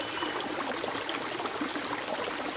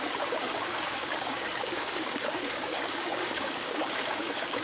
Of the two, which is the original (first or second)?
first